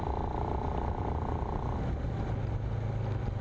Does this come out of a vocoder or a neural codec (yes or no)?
no